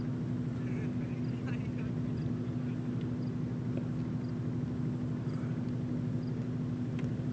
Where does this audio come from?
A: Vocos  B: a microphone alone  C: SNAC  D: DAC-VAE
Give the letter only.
B